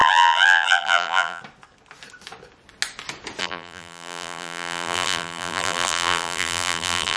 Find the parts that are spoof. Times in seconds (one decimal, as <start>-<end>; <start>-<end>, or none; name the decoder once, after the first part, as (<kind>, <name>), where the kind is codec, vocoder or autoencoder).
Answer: 0.0-1.4 (vocoder, BigVGAN v2); 3.4-7.2